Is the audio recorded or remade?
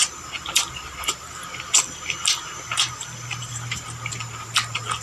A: remade